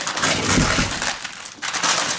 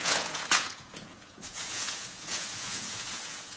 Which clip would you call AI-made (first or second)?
second